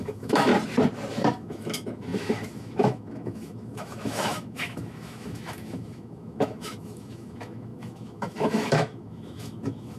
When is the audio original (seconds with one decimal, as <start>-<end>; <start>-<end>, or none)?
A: 0.5-1.1